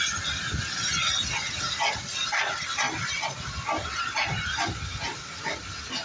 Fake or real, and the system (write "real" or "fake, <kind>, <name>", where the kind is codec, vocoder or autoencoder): real